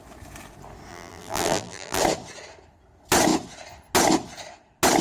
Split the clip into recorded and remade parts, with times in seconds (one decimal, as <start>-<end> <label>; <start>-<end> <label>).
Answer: 0.0-0.9 recorded; 0.9-2.0 remade; 2.0-5.0 recorded